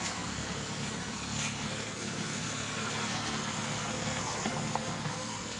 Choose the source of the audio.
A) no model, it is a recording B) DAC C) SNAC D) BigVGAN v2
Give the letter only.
C